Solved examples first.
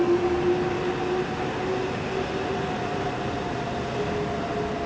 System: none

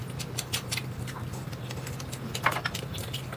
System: none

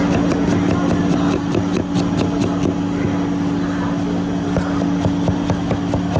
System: none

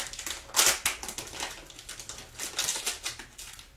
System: none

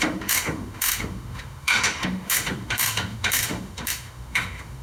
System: autoencoder, DAC-VAE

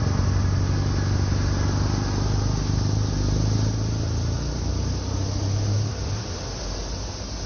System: none